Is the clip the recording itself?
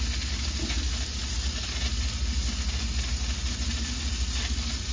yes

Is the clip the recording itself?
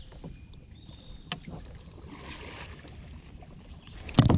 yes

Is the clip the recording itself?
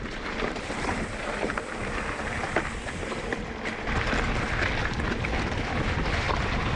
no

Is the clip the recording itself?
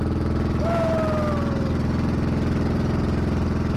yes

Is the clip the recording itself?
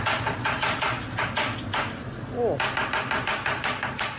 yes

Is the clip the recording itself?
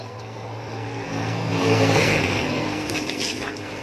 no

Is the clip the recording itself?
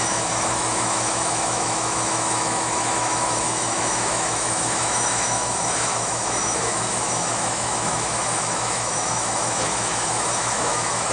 no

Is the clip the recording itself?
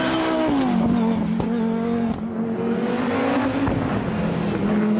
yes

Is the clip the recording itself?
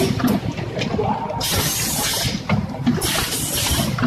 yes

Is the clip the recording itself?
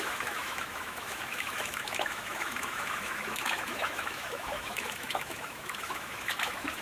no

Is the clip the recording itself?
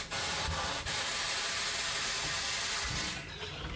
yes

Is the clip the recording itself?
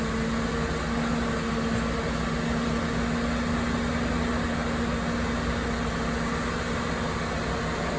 yes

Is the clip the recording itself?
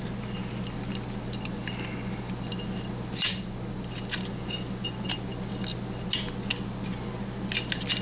yes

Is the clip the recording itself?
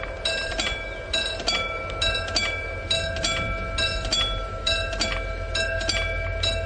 yes